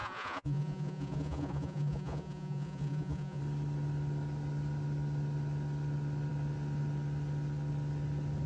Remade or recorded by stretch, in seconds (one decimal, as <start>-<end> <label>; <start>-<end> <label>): 0.0-3.4 remade; 3.4-8.5 recorded